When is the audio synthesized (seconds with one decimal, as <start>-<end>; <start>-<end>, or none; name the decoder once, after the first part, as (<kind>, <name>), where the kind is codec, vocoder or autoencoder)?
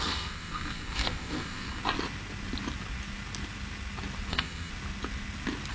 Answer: 0.0-1.8 (codec, SNAC); 4.3-4.7